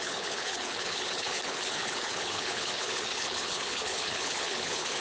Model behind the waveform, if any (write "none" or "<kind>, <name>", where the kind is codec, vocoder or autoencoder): codec, HILCodec